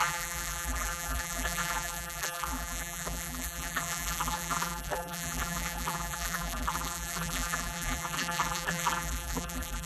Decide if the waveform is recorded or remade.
remade